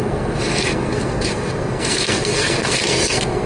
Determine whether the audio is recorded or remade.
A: remade